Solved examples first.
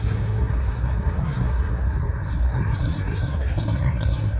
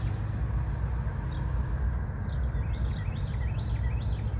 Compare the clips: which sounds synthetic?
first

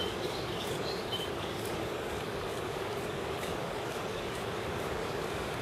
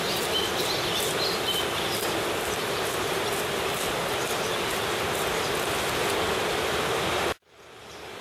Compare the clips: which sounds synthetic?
first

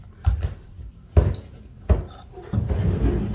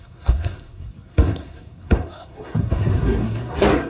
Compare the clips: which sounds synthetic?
second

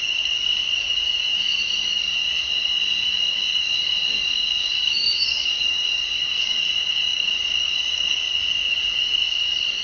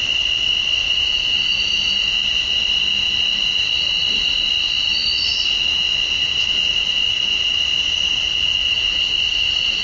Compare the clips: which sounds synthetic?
first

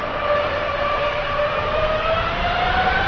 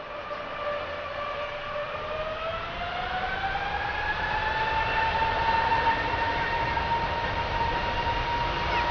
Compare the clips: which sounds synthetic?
first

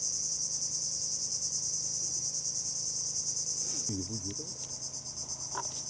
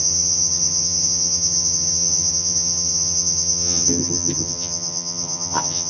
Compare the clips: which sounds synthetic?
second